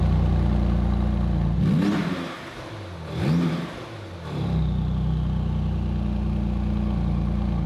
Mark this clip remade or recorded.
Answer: recorded